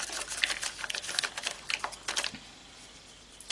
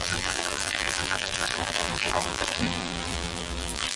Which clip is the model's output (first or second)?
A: second